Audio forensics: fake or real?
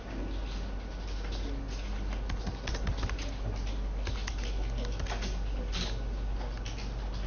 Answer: real